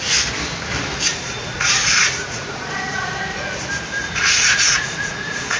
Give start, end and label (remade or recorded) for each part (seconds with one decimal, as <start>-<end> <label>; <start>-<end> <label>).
0.0-1.1 recorded; 1.1-3.1 remade; 3.1-4.0 recorded; 4.0-5.6 remade